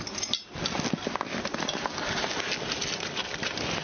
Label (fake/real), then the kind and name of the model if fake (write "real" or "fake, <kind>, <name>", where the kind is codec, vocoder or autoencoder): real